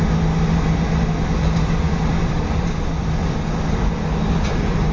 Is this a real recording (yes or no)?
yes